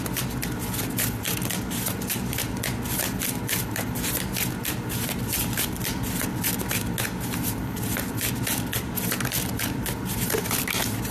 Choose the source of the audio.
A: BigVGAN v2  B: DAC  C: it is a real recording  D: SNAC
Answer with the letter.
C